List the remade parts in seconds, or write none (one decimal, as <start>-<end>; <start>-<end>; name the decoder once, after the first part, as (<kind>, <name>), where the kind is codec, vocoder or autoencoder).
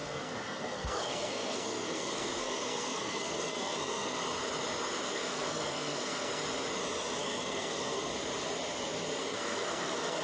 0.0-4.2 (codec, SNAC); 5.0-6.4; 7.2-8.1; 9.2-10.2